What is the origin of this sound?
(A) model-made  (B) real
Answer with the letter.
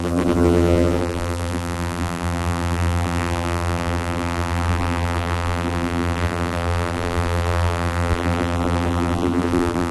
A